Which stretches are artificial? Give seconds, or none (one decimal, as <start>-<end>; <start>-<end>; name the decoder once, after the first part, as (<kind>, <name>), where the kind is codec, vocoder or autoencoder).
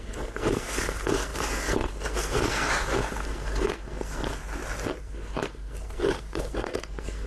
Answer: 0.0-4.4 (codec, SNAC); 5.0-7.3